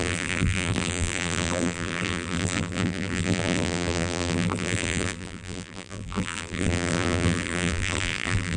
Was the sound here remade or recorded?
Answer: remade